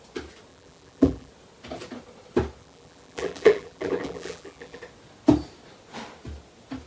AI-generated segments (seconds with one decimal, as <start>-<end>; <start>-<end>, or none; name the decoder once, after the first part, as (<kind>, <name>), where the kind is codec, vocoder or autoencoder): 0.5-1.3 (vocoder, BigVGAN v2); 2.6-4.8